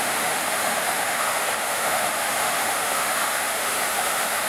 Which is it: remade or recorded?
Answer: remade